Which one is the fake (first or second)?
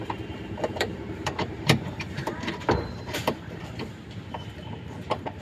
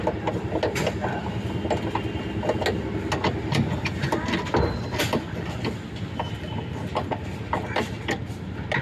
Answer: first